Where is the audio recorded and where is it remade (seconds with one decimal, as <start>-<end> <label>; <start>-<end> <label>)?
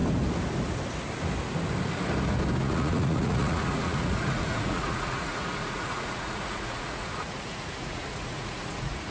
0.0-2.6 recorded; 2.6-9.1 remade